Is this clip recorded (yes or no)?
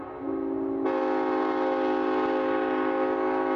yes